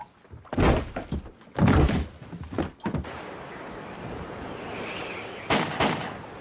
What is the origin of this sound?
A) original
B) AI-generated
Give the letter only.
A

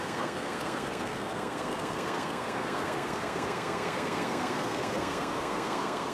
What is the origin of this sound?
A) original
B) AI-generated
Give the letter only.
B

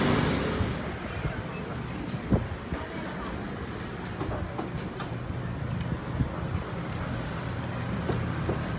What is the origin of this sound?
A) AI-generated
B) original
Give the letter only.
B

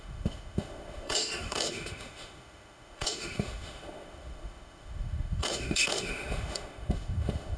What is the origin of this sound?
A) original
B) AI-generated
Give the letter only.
B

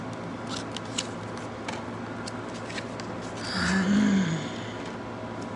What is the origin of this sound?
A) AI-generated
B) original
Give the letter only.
B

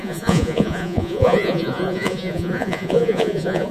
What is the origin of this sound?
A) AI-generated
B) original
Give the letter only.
A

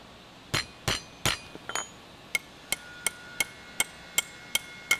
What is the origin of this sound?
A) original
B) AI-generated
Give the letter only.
A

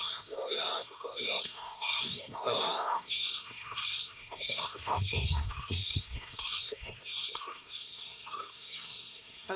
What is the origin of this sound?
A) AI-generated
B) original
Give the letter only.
A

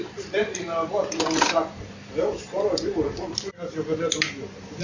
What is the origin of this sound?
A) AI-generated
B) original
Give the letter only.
A